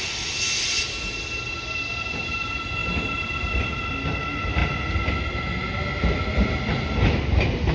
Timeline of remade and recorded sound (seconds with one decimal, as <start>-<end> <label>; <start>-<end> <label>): 0.0-7.7 recorded